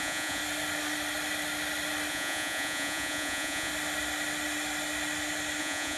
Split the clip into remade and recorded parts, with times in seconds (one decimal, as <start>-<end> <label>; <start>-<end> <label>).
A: 0.0-0.4 remade; 0.4-2.1 recorded; 2.1-3.7 remade; 3.7-5.6 recorded; 5.6-6.0 remade